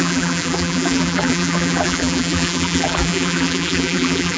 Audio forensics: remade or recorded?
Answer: remade